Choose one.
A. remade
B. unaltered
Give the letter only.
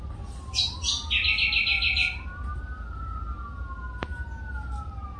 B